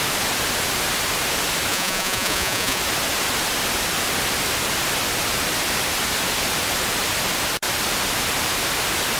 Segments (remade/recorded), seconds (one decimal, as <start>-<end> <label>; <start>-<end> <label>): 0.0-1.7 recorded; 1.7-2.8 remade; 2.8-9.2 recorded